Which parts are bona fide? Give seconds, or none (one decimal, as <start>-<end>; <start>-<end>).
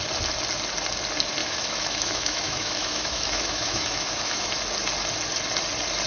0.0-1.4; 4.5-6.1